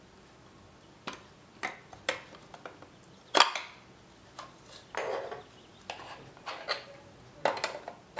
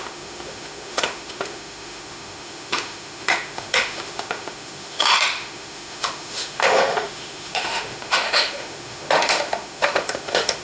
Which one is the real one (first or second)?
first